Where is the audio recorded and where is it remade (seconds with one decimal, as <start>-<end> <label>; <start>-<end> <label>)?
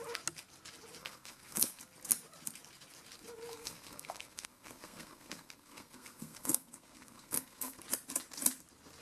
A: 0.0-1.0 recorded; 1.0-1.8 remade; 1.8-3.5 recorded; 3.5-7.8 remade; 7.8-9.0 recorded